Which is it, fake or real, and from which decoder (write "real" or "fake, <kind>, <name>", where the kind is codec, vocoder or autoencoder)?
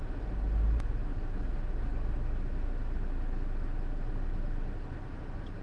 real